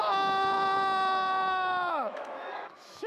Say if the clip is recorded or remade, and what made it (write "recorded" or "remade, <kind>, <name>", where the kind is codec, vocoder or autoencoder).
remade, autoencoder, DAC-VAE